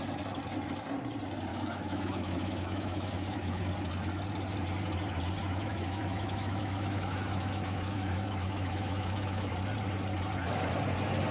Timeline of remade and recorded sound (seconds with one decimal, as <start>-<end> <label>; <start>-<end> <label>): 0.0-1.5 recorded; 1.5-3.6 remade; 3.6-5.4 recorded; 5.4-9.5 remade; 9.5-11.3 recorded